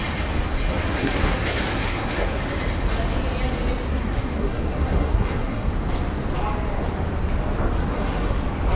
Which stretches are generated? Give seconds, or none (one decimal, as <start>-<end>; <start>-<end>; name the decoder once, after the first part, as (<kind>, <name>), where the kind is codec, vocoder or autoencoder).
0.9-2.4 (codec, SNAC); 3.9-5.7; 7.9-8.4